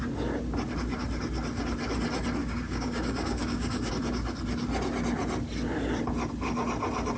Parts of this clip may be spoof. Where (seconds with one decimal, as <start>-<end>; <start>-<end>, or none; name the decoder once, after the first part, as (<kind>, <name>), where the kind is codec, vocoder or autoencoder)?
2.4-3.9 (codec, DAC)